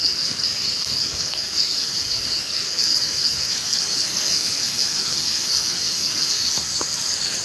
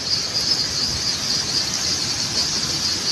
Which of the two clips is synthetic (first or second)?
first